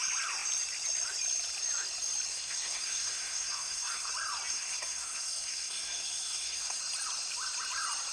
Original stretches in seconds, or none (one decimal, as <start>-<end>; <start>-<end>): 0.0-2.3; 4.1-4.5; 6.8-8.1